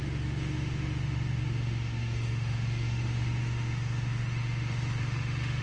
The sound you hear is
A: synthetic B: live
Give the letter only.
A